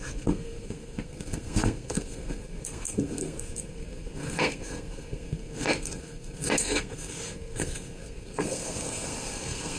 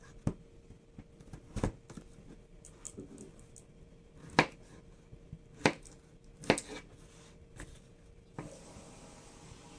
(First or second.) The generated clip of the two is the first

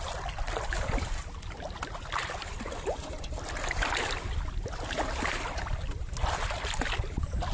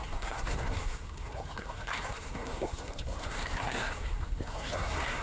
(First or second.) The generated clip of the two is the second